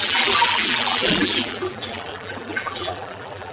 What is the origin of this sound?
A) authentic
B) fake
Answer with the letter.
B